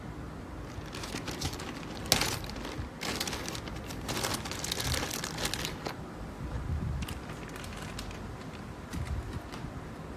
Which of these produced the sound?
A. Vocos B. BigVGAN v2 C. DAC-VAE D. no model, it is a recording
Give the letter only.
D